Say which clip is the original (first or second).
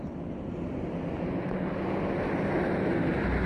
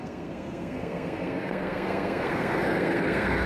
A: first